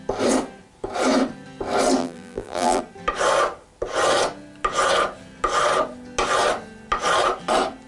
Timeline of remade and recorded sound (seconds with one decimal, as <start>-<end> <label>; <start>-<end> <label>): 0.0-2.0 recorded; 2.0-2.8 remade; 2.8-7.9 recorded